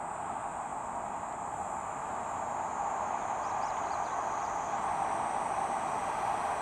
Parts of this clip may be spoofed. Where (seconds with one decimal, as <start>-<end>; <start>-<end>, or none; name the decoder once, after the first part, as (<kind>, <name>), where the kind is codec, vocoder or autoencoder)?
none